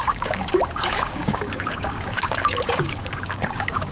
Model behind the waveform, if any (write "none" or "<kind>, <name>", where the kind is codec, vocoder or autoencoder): codec, DAC